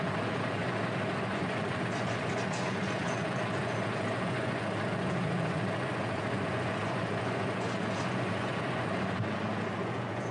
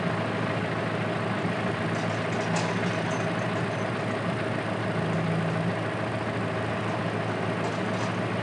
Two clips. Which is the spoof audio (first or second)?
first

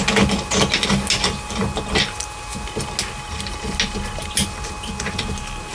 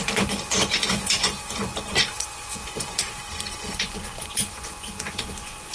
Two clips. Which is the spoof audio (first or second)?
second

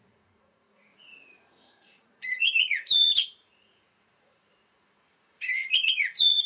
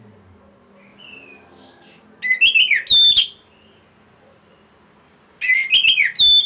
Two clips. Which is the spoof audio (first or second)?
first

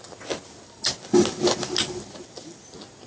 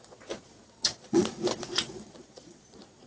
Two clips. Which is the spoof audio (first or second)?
second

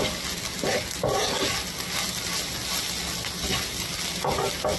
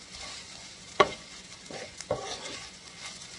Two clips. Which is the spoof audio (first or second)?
second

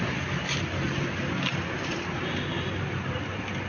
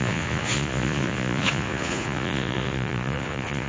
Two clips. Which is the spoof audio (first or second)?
second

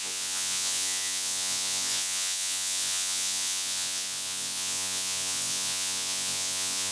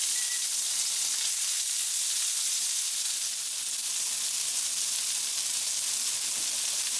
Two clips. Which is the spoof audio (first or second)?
first